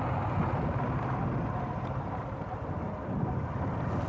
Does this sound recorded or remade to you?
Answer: recorded